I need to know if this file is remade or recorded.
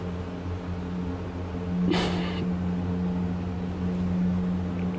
recorded